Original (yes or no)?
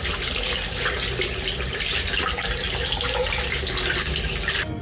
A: yes